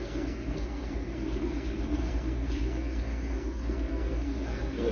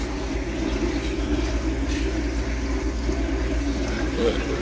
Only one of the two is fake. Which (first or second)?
first